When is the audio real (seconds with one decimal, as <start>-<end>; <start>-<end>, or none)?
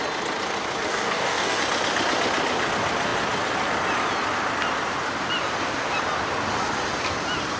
0.0-0.9; 1.6-7.6